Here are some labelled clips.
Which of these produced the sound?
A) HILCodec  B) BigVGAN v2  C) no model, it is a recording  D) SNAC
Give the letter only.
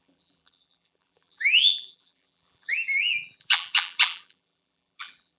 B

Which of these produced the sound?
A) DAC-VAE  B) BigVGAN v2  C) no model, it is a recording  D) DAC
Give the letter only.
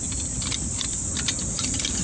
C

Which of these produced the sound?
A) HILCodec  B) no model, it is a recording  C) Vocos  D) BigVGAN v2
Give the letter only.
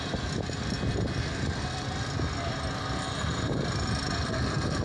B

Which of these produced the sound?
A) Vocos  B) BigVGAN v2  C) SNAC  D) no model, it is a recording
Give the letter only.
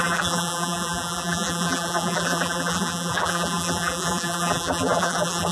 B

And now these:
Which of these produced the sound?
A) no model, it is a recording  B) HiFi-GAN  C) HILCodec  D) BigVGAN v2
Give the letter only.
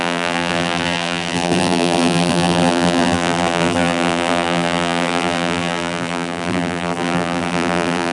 D